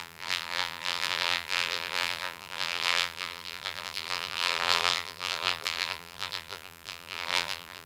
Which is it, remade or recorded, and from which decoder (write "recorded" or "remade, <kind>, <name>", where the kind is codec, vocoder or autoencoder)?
remade, vocoder, BigVGAN v2